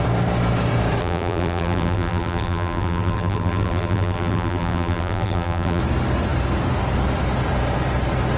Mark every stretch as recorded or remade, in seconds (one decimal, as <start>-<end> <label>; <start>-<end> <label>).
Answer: 0.0-1.0 recorded; 1.0-5.8 remade; 5.8-8.4 recorded